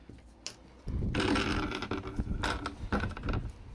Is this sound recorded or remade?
recorded